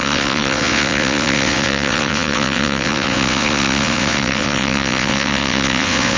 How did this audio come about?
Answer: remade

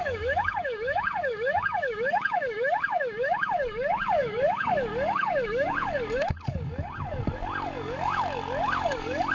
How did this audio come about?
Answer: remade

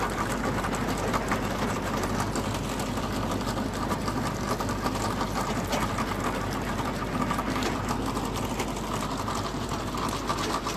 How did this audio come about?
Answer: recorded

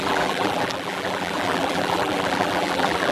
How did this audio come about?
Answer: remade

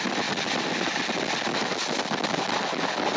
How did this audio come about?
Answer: recorded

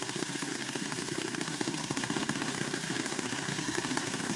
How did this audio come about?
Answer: remade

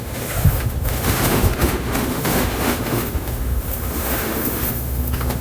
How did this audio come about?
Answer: remade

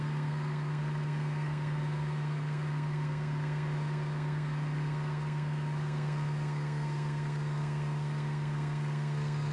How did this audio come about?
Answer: remade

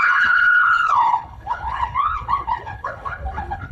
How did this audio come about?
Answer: remade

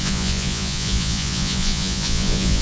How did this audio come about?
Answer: remade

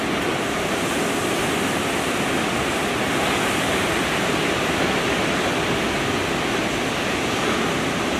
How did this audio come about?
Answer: recorded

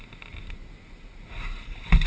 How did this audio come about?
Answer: recorded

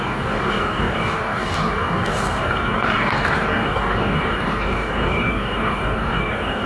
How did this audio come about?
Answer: remade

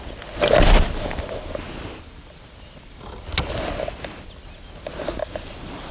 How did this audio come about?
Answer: recorded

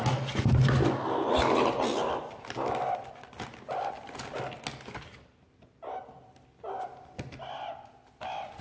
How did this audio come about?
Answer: recorded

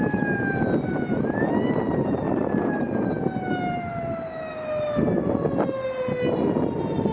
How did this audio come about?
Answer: recorded